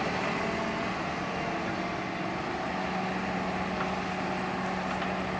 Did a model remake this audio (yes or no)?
no